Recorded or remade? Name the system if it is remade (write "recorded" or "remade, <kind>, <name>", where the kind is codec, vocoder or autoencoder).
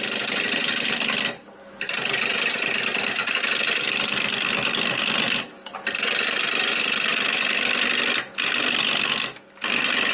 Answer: recorded